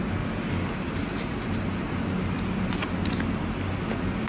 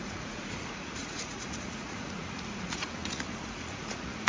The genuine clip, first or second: first